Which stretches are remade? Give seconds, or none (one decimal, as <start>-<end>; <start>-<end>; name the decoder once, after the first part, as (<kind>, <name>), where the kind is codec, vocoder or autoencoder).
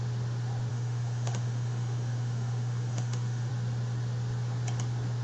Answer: 0.7-3.5 (autoencoder, DAC-VAE)